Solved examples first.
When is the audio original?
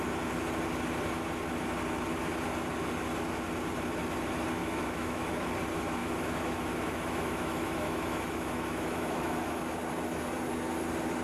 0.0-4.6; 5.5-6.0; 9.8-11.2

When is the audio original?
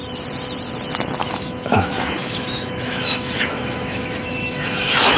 0.0-1.2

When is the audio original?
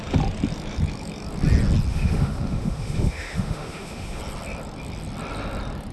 0.0-1.9; 4.2-5.9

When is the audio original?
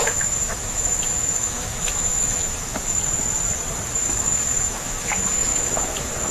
3.0-3.9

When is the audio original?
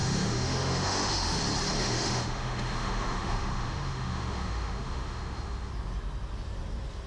1.4-1.8; 5.7-7.1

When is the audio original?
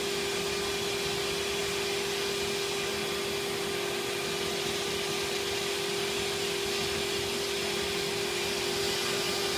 0.0-9.6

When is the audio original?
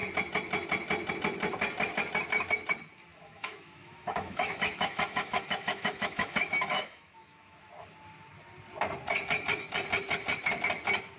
0.0-3.1; 7.7-11.2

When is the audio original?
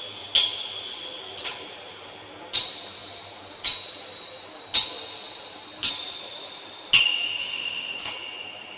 0.0-7.4; 8.1-8.8